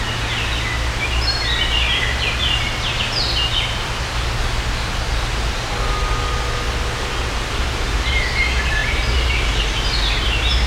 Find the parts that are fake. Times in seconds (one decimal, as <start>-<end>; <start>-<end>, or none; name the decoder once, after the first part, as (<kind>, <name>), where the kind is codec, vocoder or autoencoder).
none